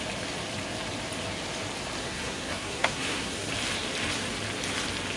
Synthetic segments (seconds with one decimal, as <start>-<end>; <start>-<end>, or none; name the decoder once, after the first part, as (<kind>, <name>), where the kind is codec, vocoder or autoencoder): 2.0-3.5 (codec, SNAC)